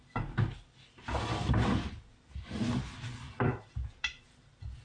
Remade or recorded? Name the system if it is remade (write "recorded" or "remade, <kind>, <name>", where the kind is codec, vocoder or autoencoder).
remade, vocoder, BigVGAN v2